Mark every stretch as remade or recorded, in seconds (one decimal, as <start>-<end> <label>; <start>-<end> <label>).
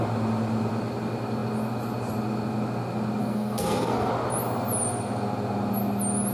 0.0-3.2 recorded; 3.2-4.1 remade; 4.1-6.3 recorded